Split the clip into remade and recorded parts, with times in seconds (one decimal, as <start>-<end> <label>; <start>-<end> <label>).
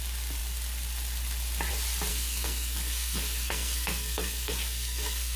0.0-2.1 recorded; 2.1-5.4 remade